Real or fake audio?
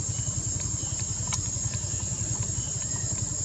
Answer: real